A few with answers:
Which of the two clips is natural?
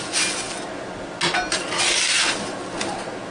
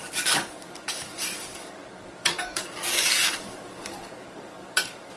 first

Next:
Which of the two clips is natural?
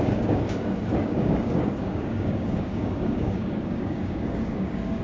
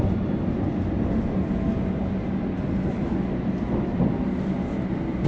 second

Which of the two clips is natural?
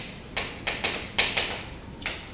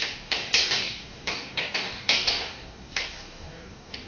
first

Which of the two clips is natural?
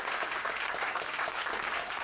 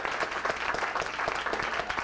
second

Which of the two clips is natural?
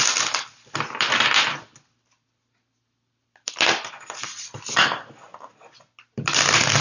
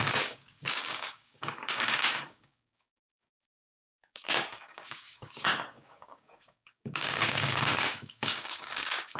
first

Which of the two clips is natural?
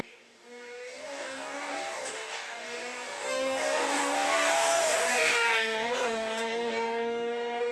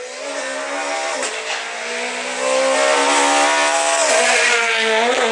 second